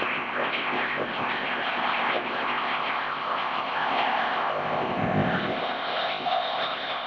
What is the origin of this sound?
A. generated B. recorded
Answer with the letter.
A